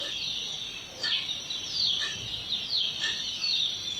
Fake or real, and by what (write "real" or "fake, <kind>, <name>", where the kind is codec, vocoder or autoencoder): real